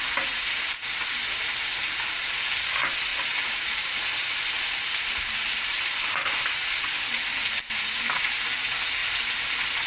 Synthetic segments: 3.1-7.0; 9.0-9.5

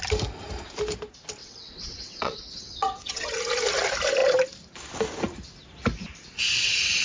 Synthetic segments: 1.4-3.3

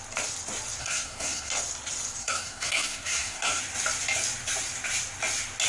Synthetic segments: 0.8-1.5; 2.2-3.6

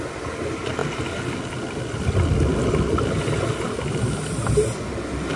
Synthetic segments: none

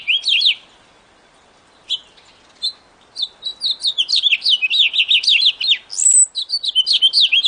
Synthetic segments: none